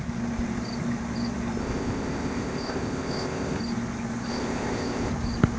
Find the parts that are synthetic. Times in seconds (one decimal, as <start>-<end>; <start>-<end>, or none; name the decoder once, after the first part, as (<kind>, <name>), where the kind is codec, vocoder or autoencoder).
1.6-3.6 (codec, ZipCodec); 4.3-5.1